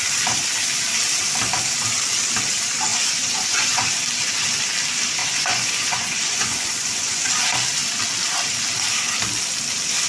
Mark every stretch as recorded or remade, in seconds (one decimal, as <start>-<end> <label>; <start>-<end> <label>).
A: 0.0-2.9 recorded; 2.9-3.9 remade; 3.9-5.2 recorded; 5.2-7.3 remade; 7.3-10.1 recorded